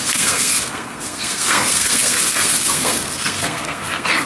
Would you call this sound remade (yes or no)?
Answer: yes